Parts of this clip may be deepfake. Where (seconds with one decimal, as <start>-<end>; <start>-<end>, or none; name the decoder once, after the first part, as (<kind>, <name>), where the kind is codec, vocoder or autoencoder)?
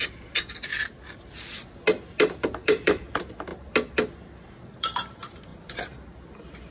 0.0-0.7 (vocoder, BigVGAN v2); 2.3-3.5; 4.8-6.7